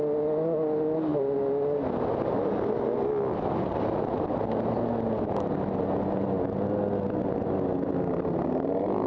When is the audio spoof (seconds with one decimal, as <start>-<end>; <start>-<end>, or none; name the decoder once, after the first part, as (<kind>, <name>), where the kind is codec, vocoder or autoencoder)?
none